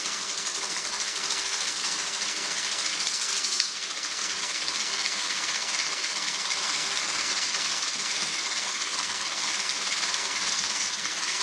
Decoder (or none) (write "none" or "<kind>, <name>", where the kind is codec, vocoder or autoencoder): codec, SNAC